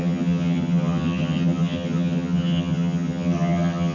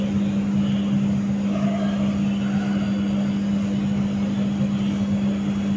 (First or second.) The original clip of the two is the second